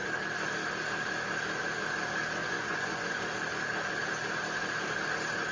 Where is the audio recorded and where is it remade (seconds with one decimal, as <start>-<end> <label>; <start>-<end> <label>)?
0.0-2.4 recorded; 2.4-3.2 remade; 3.2-5.5 recorded